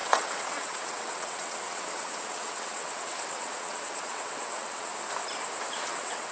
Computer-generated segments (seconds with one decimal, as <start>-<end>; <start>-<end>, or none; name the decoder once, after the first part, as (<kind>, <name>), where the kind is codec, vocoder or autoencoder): 0.0-4.9 (vocoder, WaveNeXt); 5.7-6.3